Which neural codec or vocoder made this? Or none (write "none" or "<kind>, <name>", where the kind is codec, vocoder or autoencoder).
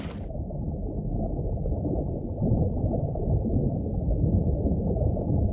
none